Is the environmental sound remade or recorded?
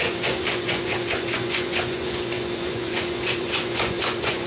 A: remade